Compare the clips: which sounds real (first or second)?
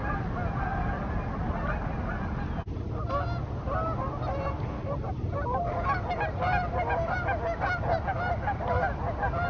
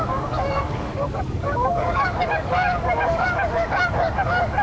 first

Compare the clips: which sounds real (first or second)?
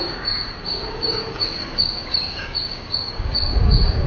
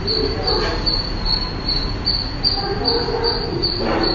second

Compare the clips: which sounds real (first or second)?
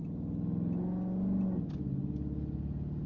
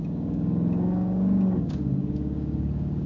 first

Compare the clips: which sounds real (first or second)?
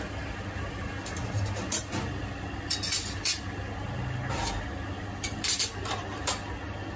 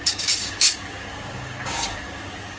first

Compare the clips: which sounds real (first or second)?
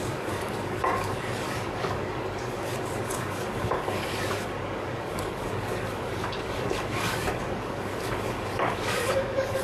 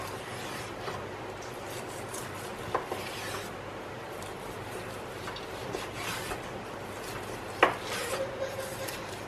second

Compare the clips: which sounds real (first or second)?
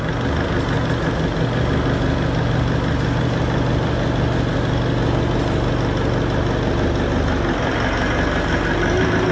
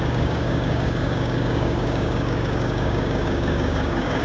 first